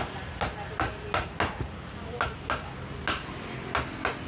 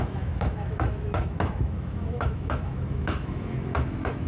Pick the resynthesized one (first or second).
second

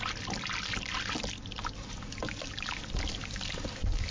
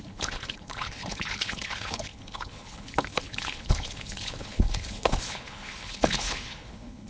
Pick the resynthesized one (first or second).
second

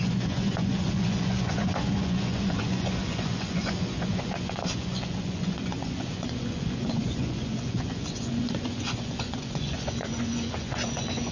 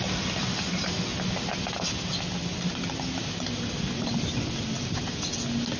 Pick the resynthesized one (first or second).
first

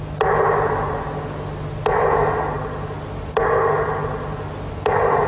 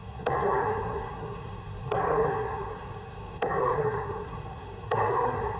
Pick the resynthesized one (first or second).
second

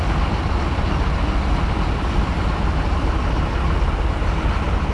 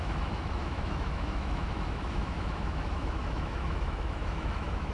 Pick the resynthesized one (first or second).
second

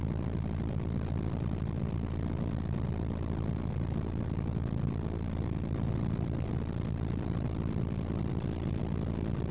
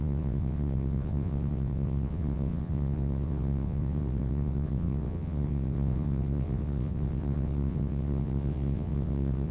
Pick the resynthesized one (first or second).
second